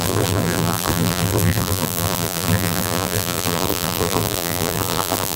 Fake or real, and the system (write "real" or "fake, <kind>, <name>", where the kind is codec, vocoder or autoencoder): fake, vocoder, BigVGAN v2